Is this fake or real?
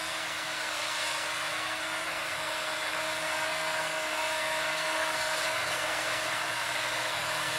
fake